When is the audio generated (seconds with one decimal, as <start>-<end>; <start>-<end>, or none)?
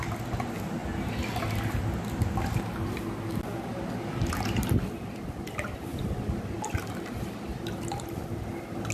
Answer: none